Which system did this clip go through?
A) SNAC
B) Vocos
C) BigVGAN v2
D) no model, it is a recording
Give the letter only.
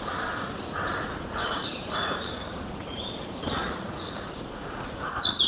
B